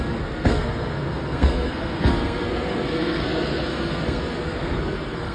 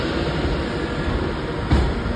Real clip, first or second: second